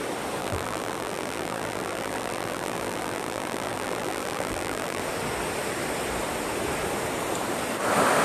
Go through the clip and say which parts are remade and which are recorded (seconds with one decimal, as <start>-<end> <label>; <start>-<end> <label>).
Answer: 0.0-0.4 recorded; 0.4-5.0 remade; 5.0-8.2 recorded